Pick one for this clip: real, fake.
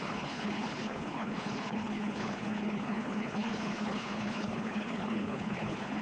fake